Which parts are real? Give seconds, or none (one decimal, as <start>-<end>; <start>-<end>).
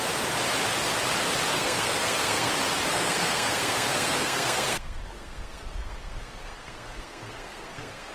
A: 0.0-1.5; 2.5-2.9